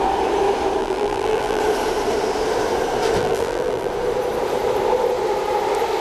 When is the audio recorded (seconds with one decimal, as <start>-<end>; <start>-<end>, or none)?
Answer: 0.0-0.8; 1.6-3.2; 3.9-6.0